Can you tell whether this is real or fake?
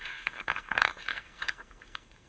fake